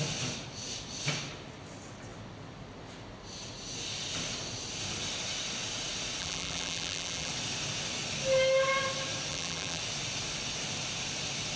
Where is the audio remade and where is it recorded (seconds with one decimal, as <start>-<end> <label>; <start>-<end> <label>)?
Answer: 0.0-6.2 recorded; 6.2-7.3 remade; 7.3-9.3 recorded; 9.3-9.8 remade; 9.8-11.6 recorded